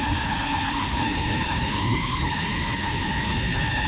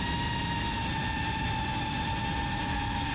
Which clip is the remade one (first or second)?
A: first